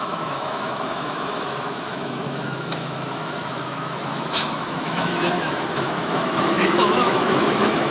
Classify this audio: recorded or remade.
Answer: remade